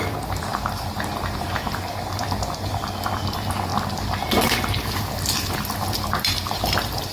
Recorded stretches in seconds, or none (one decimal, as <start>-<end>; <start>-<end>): 0.0-0.5; 1.7-7.1